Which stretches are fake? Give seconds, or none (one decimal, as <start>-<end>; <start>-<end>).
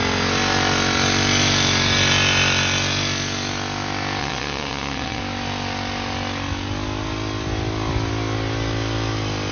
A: 4.2-5.2